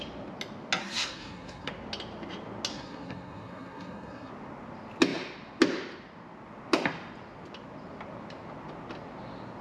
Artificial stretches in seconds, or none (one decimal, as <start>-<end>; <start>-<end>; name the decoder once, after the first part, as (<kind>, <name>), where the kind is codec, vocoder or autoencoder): 0.8-1.7 (codec, SNAC); 2.7-4.3